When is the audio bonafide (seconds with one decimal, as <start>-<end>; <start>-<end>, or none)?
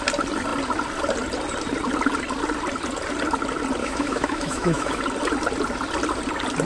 0.0-3.8; 5.0-6.7